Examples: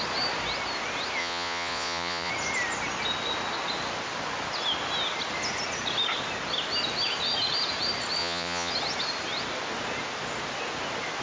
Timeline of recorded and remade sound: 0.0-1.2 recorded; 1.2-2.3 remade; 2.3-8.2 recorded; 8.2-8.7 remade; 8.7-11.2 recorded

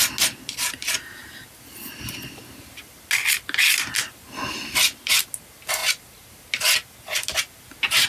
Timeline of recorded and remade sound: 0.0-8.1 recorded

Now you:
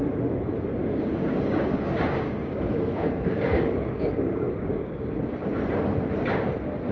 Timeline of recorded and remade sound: 0.0-0.8 recorded; 0.8-4.9 remade; 4.9-6.9 recorded